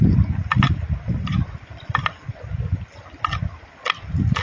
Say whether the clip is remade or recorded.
recorded